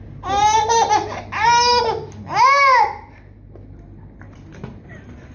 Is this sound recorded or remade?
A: recorded